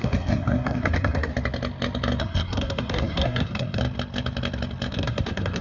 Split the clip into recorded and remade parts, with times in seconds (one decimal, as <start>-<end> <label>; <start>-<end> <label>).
0.0-1.3 remade; 1.3-2.2 recorded; 2.2-3.8 remade; 3.8-4.9 recorded; 4.9-5.6 remade